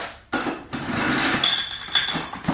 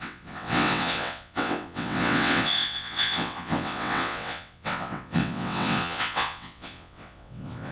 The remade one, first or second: second